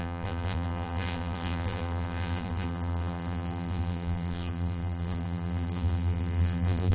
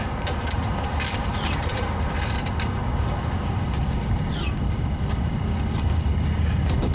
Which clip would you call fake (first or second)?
first